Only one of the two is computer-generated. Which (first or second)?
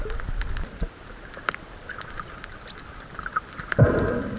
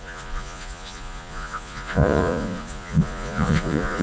second